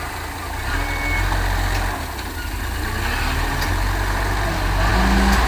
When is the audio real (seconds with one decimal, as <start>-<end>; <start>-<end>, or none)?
0.0-5.5

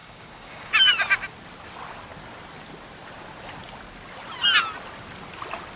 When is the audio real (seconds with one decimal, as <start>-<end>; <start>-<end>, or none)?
0.7-5.8